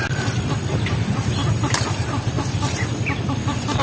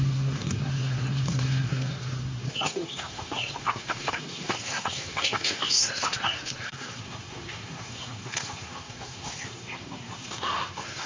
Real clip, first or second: first